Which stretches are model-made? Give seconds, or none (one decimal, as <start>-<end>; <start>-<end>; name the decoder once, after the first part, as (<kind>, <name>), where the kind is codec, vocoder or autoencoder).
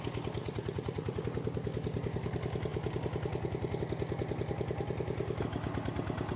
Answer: 0.4-1.2 (vocoder, Vocos)